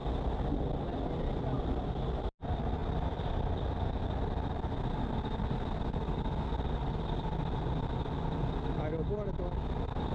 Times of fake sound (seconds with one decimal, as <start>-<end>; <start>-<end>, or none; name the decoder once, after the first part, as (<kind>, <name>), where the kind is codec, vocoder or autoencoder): none